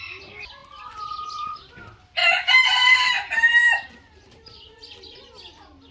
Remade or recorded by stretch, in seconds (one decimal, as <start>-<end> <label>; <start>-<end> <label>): 0.0-0.6 recorded; 0.6-1.7 remade; 1.7-2.2 recorded; 2.2-3.1 remade; 3.1-3.6 recorded; 3.6-5.2 remade; 5.2-5.9 recorded